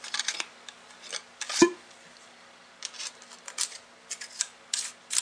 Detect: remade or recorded recorded